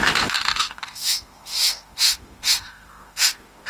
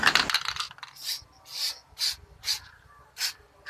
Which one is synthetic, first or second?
first